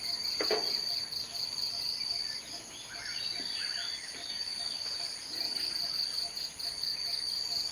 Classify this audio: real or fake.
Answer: real